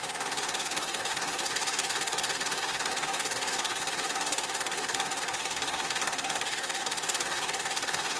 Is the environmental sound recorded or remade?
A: remade